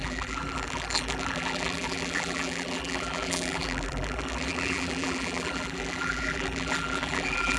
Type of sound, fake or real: fake